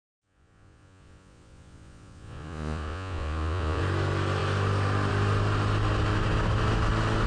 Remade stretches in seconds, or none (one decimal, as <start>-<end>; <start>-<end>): 0.0-3.8